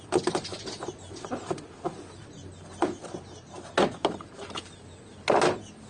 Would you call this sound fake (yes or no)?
no